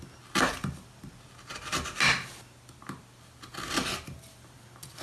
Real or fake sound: real